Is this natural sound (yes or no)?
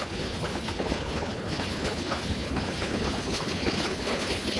no